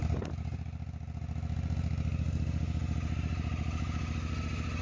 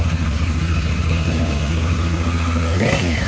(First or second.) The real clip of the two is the first